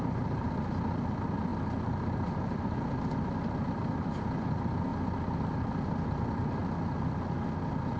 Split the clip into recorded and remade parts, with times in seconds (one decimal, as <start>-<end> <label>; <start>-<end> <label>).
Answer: 0.0-1.5 remade; 1.5-2.3 recorded; 2.3-4.9 remade; 4.9-5.7 recorded; 5.7-6.6 remade; 6.6-8.0 recorded